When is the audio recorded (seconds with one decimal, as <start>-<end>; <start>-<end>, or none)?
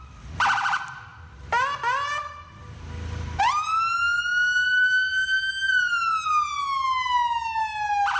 0.0-4.7; 5.5-8.2